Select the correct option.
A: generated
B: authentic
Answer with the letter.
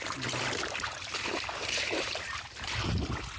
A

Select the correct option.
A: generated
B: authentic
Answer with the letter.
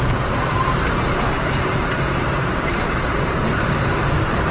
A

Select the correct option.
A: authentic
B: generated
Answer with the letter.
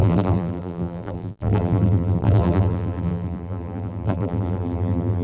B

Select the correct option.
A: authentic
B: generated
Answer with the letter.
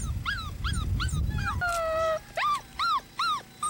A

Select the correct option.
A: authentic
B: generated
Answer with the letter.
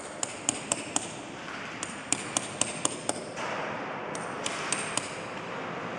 B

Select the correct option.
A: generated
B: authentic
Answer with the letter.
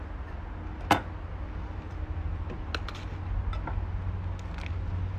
B